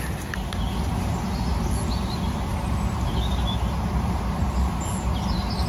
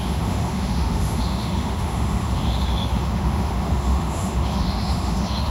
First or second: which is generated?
second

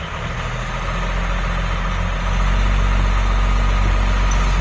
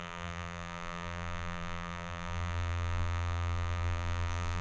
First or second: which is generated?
second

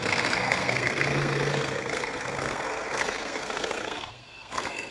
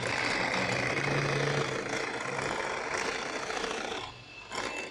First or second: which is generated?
first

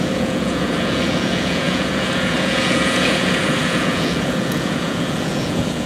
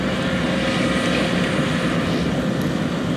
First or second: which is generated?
first